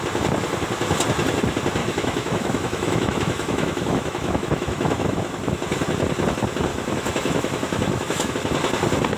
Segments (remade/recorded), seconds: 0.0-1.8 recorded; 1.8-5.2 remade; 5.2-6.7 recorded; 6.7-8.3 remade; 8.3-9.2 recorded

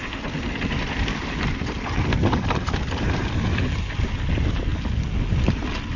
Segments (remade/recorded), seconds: 0.0-3.6 remade; 3.6-6.0 recorded

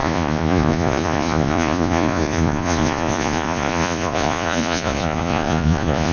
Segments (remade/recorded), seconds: 0.0-6.1 remade

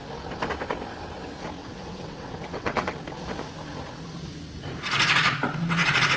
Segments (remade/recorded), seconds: 0.0-1.6 recorded; 1.6-2.9 remade; 2.9-6.2 recorded